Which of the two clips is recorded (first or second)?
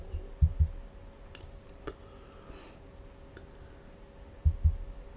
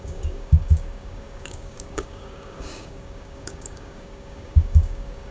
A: first